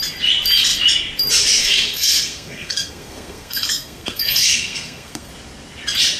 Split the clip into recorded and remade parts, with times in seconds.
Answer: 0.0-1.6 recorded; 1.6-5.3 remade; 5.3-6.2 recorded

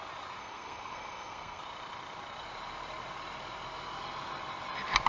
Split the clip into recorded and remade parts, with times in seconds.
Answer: 0.0-0.4 recorded; 0.4-1.6 remade; 1.6-5.1 recorded

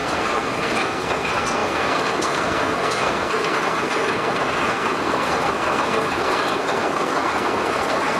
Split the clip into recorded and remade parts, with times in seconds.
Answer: 0.0-8.2 remade

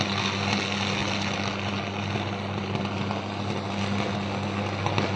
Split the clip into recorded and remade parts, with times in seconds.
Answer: 0.0-5.2 recorded

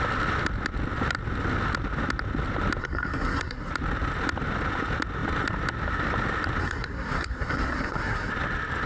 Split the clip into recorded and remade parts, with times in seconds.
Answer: 0.0-2.8 recorded; 2.8-3.7 remade; 3.7-6.6 recorded; 6.6-8.3 remade; 8.3-8.9 recorded

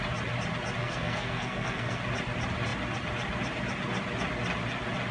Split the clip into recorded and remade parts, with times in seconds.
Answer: 0.0-0.8 recorded; 0.8-2.0 remade; 2.0-5.1 recorded

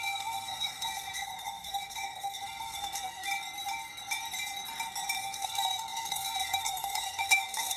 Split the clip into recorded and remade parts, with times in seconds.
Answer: 0.0-3.3 remade; 3.3-5.2 recorded; 5.2-7.8 remade